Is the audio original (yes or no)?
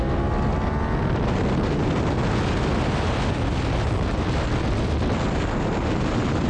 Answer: yes